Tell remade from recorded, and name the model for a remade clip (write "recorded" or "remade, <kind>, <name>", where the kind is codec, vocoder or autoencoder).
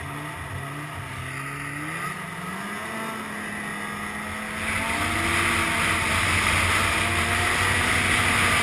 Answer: recorded